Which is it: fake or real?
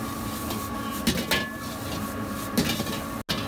real